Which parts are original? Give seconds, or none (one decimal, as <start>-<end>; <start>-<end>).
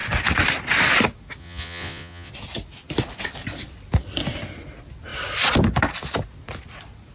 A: 0.0-1.4; 2.3-7.1